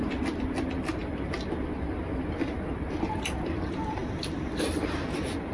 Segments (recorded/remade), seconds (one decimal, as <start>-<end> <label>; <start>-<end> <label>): 0.0-1.0 remade; 1.0-3.1 recorded; 3.1-5.5 remade

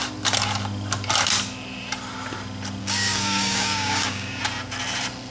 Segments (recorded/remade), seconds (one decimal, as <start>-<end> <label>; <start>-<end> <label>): 0.0-2.8 recorded; 2.8-4.4 remade; 4.4-5.3 recorded

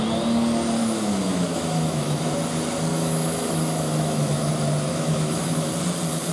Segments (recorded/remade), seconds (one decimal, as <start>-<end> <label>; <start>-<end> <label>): 0.0-0.8 recorded; 0.8-2.3 remade; 2.3-2.9 recorded; 2.9-4.5 remade; 4.5-4.9 recorded; 4.9-5.7 remade; 5.7-6.3 recorded